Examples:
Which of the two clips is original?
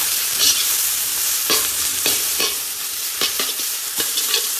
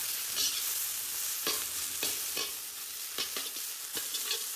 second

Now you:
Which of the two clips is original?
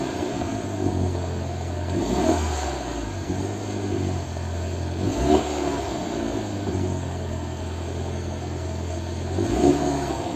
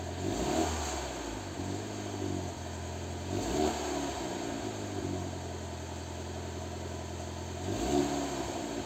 second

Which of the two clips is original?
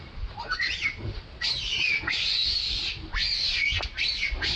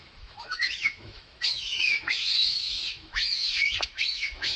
first